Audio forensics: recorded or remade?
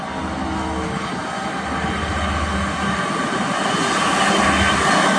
recorded